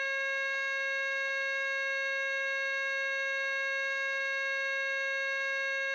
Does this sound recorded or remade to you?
remade